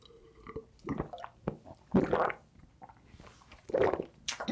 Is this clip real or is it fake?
real